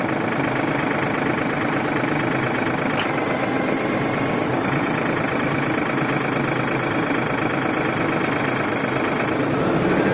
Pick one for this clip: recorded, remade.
recorded